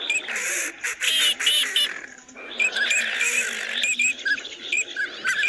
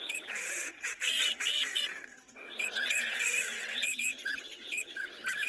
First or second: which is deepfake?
second